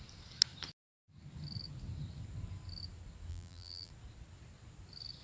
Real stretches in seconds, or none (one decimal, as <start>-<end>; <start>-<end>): 0.0-3.3; 3.9-5.2